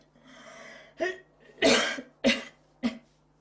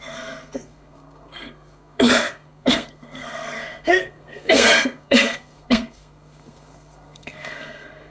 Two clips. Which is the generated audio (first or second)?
second